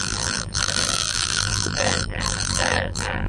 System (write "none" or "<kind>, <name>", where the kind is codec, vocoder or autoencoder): vocoder, BigVGAN v2